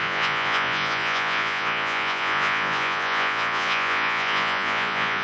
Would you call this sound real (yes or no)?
no